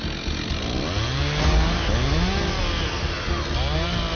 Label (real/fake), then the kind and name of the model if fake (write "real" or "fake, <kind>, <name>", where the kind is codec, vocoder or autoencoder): real